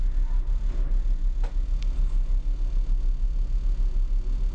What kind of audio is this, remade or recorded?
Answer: recorded